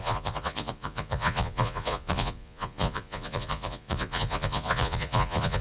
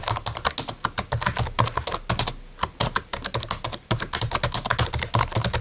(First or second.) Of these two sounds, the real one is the second